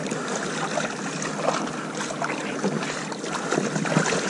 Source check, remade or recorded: recorded